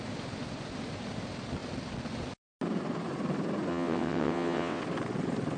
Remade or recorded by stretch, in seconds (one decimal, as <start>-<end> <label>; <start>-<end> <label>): 0.0-3.7 recorded; 3.7-4.8 remade; 4.8-5.6 recorded